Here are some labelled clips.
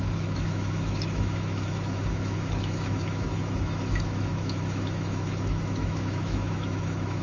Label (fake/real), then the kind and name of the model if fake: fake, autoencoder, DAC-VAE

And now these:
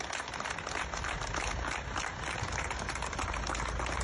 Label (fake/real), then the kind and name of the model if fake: real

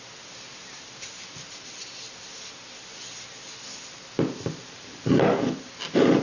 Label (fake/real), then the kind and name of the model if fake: real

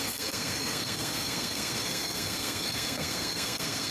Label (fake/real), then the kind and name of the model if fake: fake, codec, SNAC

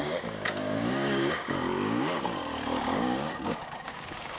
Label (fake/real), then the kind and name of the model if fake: fake, codec, DAC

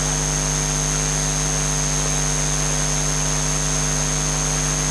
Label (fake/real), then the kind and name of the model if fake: real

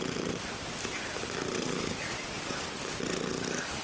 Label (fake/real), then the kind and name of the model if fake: real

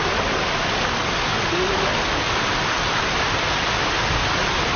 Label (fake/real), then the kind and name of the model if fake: real